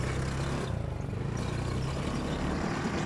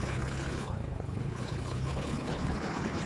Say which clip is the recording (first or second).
first